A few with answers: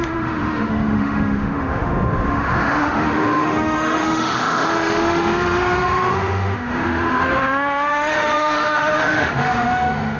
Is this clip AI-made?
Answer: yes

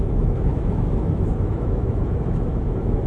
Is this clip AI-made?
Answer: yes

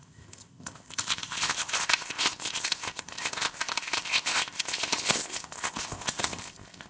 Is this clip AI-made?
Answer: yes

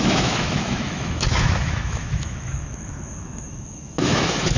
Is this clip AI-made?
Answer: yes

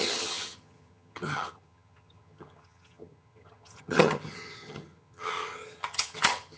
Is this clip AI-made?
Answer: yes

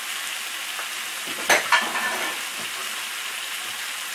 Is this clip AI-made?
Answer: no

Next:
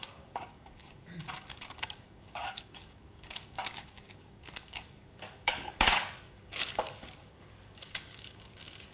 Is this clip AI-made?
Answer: yes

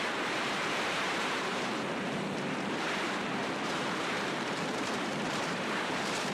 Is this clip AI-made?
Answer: yes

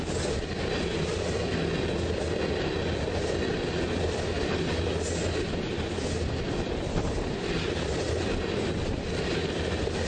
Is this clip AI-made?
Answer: no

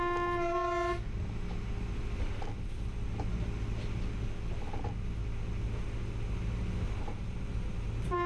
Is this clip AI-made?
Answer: no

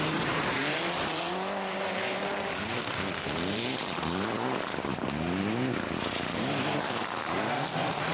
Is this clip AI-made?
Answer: yes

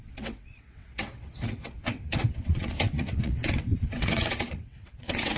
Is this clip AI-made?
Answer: yes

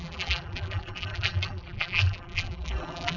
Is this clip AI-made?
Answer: yes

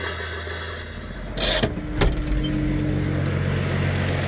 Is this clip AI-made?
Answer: no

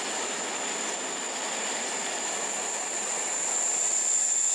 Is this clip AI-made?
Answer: no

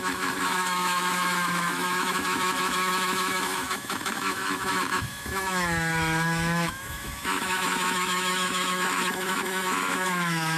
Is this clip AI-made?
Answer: yes